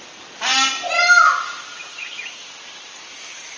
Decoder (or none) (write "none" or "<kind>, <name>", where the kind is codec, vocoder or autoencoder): none